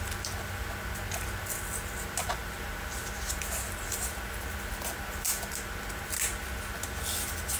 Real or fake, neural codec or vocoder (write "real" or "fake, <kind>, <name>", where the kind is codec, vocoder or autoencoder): real